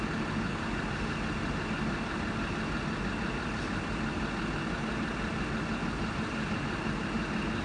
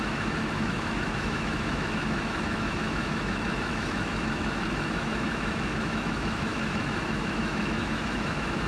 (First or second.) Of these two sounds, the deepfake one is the second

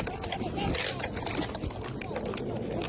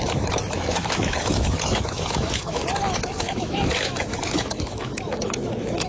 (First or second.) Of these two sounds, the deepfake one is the second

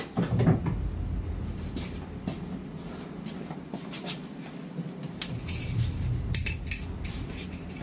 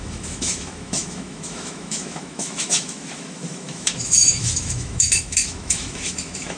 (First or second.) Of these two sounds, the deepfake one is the second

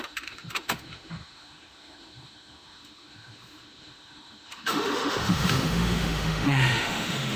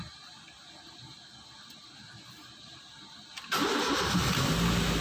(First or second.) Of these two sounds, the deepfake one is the first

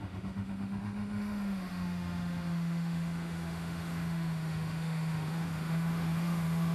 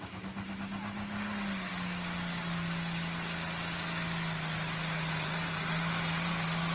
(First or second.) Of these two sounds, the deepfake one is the first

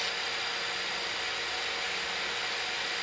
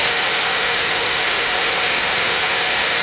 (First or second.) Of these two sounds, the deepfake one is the second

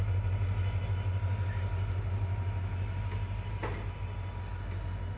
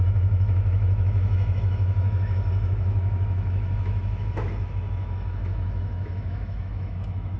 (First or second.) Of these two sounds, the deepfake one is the second